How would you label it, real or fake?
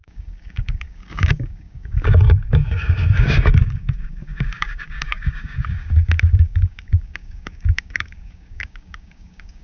fake